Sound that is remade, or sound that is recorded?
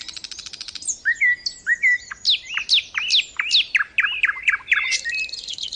recorded